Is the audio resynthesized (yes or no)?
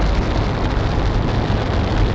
no